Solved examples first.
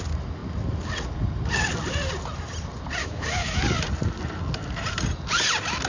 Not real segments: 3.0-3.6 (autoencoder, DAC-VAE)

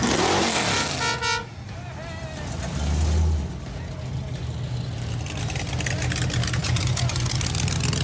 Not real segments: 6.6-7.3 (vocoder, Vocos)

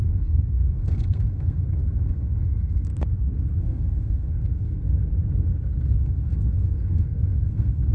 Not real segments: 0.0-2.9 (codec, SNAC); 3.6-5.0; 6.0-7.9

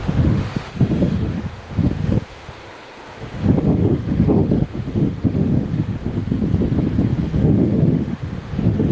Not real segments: 0.0-6.2 (autoencoder, DAC-VAE); 7.1-8.9

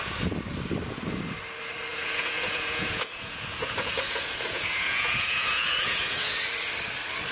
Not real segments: 1.9-6.3 (vocoder, Vocos)

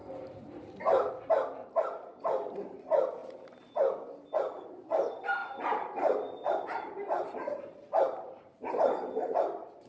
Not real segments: 0.0-1.1 (vocoder, BigVGAN v2); 5.4-8.7

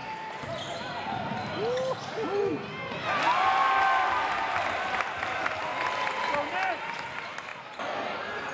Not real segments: none